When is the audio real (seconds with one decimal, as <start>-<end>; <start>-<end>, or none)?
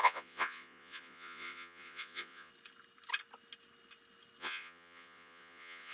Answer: 2.5-4.4